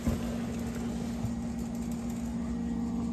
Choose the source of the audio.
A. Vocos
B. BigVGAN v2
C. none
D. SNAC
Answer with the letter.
C